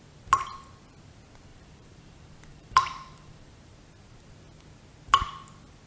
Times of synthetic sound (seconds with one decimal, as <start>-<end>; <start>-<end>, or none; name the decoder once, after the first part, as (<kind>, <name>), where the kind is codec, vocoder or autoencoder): 1.5-3.7 (vocoder, BigVGAN v2)